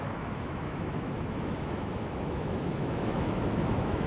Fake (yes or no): yes